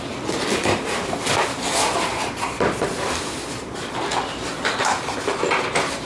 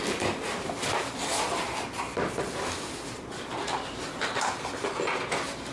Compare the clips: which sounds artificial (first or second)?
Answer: first